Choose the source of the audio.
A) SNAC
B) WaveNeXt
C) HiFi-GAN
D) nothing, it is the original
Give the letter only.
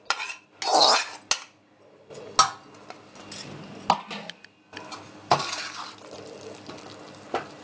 D